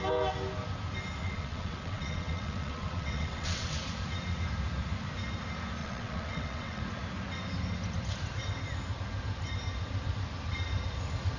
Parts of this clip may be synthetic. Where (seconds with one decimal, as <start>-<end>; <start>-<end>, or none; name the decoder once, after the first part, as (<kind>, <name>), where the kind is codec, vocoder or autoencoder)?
1.2-3.8 (vocoder, WaveNeXt); 5.8-6.8